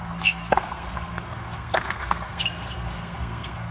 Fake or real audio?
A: fake